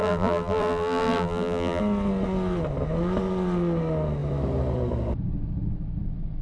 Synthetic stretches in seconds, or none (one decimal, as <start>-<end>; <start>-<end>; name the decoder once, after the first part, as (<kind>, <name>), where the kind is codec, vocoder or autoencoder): 0.0-1.8 (vocoder, BigVGAN v2)